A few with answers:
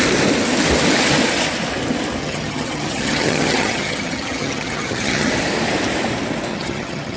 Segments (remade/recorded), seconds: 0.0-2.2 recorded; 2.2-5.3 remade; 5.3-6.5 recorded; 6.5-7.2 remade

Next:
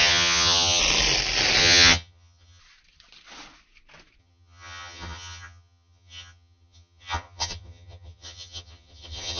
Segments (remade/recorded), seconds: 0.0-0.8 remade; 0.8-1.6 recorded; 1.6-2.6 remade; 2.6-4.2 recorded; 4.2-9.4 remade

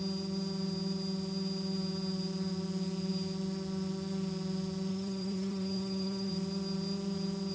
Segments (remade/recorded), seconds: 0.0-4.9 recorded; 4.9-6.3 remade; 6.3-7.5 recorded

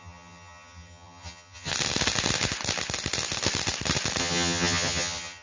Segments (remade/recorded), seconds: 0.0-1.7 remade; 1.7-4.2 recorded; 4.2-5.4 remade

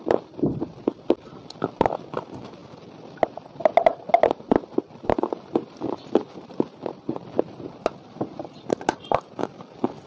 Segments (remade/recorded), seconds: 0.0-10.1 recorded

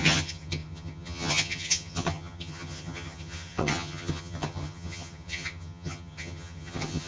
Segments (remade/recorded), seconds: 0.0-7.1 remade